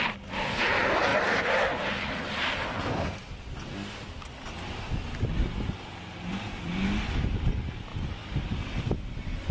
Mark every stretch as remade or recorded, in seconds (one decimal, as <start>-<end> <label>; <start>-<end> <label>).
0.0-9.5 recorded